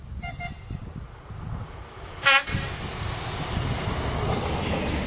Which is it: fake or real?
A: real